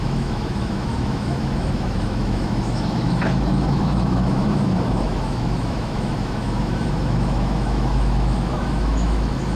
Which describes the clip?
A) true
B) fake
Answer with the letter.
B